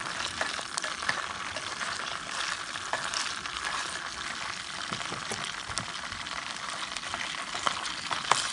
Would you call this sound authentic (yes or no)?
yes